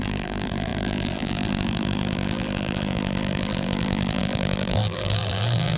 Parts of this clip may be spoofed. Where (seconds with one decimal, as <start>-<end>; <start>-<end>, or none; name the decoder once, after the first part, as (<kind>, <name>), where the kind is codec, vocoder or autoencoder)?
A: 0.0-5.8 (vocoder, BigVGAN v2)